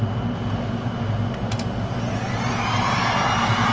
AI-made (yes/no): no